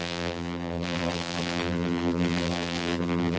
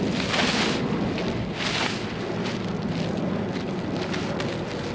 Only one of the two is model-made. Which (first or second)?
first